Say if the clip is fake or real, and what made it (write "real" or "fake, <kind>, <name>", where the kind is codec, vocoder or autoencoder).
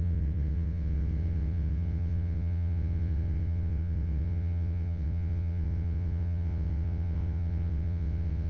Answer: fake, vocoder, WaveNeXt